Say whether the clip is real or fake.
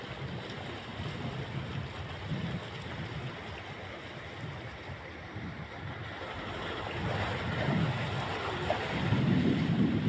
real